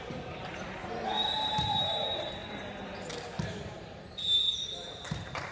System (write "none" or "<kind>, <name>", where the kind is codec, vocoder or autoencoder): vocoder, BigVGAN v2